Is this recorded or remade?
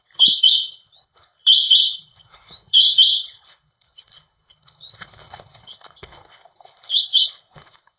remade